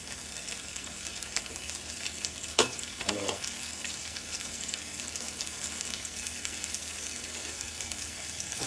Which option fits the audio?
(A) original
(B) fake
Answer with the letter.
B